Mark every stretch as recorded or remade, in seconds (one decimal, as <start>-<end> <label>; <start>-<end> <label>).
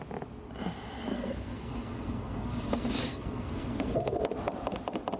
0.0-1.1 recorded; 1.1-4.2 remade; 4.2-5.2 recorded